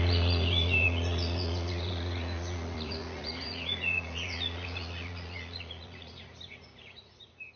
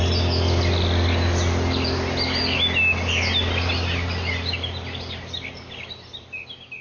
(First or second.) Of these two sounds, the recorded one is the second